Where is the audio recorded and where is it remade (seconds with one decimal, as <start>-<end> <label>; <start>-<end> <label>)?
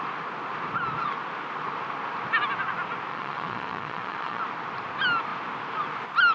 0.0-3.1 recorded; 3.1-4.4 remade; 4.4-6.3 recorded